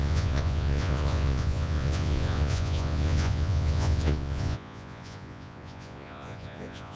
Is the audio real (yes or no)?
no